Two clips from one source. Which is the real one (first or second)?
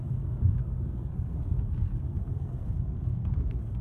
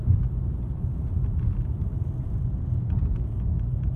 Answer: second